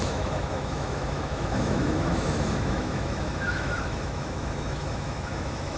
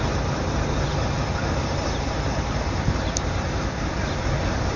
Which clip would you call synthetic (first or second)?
first